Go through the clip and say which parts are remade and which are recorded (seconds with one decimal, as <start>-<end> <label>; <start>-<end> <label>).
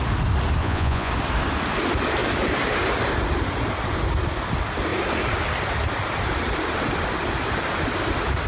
0.0-0.6 recorded; 0.6-1.1 remade; 1.1-8.5 recorded